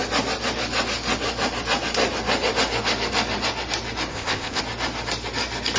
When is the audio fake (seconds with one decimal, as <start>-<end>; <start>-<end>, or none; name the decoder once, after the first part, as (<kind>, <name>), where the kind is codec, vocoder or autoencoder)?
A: 4.1-4.6 (codec, ZipCodec)